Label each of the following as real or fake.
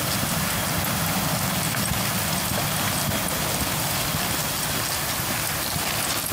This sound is real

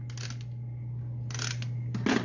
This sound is real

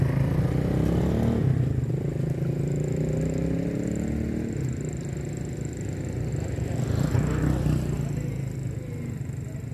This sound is real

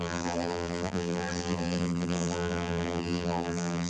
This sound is fake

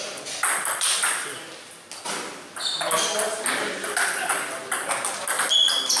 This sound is real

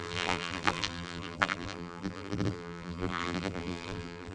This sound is fake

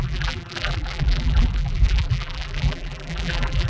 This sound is fake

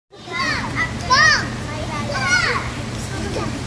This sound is real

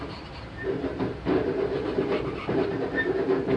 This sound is fake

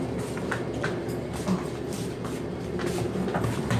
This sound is real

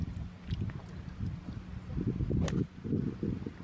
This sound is real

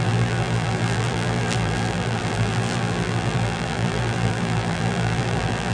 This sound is fake